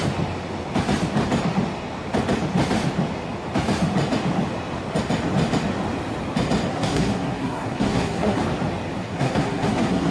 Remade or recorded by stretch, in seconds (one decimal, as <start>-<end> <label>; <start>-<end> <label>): 0.0-6.7 recorded; 6.7-8.4 remade; 8.4-9.0 recorded; 9.0-10.1 remade